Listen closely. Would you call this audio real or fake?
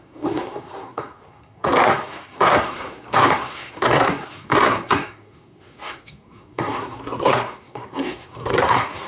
fake